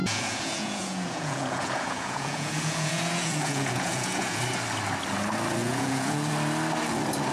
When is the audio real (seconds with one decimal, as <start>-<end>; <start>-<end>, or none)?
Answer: 4.4-5.6; 6.3-7.3